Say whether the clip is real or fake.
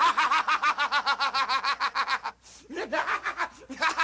real